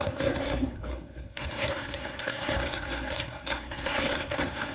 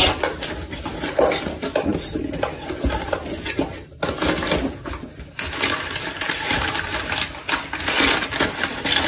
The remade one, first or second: first